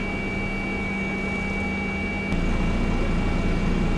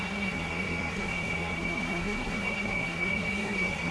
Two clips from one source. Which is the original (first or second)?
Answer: first